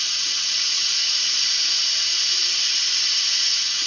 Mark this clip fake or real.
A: real